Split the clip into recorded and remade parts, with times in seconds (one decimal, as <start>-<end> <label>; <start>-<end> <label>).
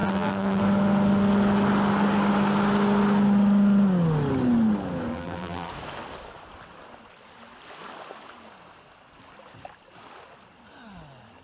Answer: 0.0-0.6 remade; 0.6-5.1 recorded; 5.1-5.7 remade; 5.7-11.4 recorded